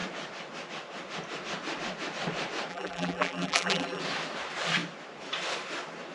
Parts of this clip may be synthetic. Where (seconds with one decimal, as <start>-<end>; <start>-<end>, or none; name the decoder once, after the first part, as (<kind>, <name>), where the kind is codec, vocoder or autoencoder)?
2.7-4.0 (vocoder, BigVGAN v2)